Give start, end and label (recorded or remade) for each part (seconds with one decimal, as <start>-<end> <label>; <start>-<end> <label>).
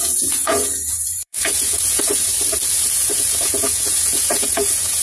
0.0-2.3 remade; 2.3-2.9 recorded; 2.9-5.0 remade